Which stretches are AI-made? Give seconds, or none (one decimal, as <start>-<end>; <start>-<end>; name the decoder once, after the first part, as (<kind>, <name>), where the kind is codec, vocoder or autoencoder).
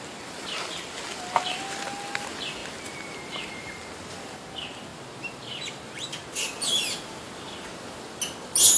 none